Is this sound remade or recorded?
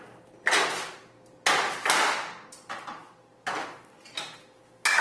recorded